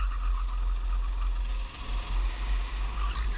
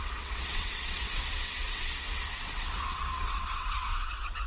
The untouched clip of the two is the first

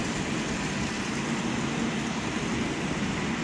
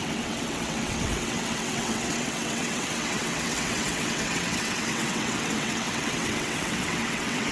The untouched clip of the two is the first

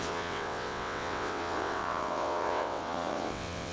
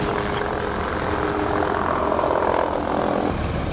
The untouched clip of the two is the second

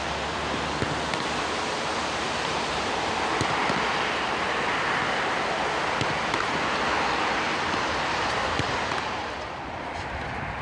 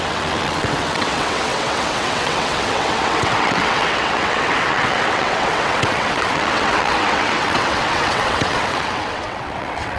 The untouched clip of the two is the first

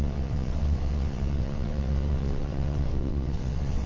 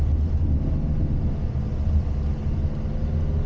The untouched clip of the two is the second